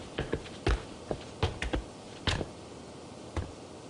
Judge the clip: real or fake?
real